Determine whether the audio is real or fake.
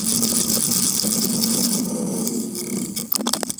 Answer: real